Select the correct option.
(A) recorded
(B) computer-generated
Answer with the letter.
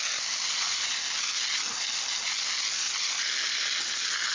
A